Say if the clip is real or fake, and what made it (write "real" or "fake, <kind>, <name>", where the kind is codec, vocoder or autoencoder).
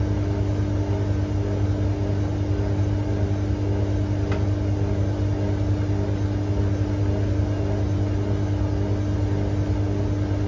real